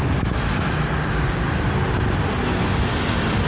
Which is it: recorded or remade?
recorded